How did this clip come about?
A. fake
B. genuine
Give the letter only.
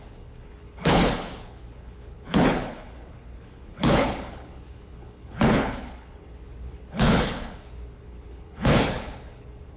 A